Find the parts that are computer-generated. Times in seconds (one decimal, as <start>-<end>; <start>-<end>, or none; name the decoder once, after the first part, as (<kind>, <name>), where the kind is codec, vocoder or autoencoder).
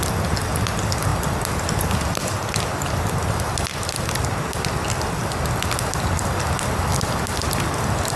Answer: none